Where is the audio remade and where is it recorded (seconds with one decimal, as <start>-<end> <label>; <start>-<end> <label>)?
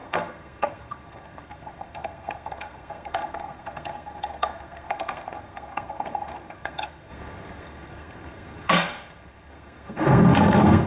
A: 0.0-10.9 remade